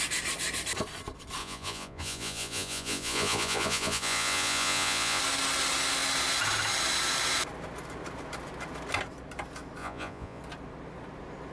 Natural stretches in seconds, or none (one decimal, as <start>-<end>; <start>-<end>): 0.0-1.4; 5.2-9.8; 10.4-11.5